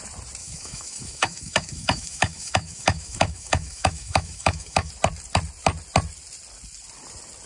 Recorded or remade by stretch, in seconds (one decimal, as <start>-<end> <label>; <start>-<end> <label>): 0.0-0.4 recorded; 0.4-4.9 remade; 4.9-7.5 recorded